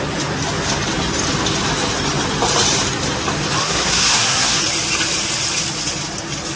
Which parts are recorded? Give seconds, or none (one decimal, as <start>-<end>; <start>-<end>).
0.0-3.6; 4.6-6.6